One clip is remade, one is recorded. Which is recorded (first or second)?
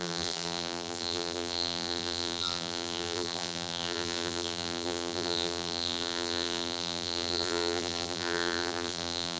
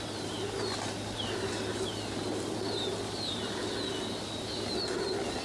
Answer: second